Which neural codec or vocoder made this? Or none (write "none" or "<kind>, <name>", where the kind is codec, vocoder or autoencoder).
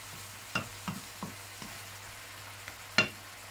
none